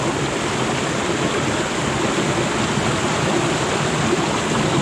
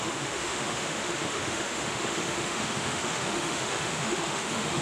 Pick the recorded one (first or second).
first